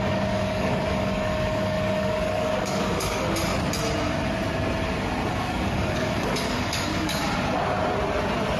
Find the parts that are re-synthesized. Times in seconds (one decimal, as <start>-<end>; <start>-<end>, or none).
0.0-3.5; 5.3-7.2